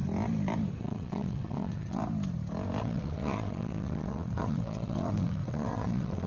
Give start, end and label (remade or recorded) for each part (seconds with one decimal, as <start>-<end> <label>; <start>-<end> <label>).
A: 0.0-0.8 recorded; 0.8-2.0 remade; 2.0-2.8 recorded; 2.8-6.3 remade